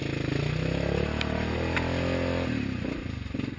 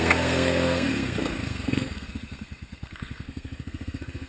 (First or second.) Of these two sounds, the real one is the first